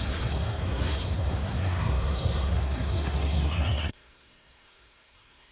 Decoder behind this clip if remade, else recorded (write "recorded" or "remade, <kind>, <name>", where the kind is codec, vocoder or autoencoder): remade, codec, SNAC